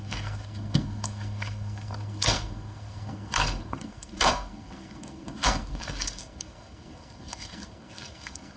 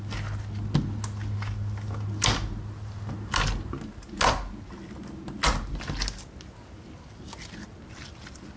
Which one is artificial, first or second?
first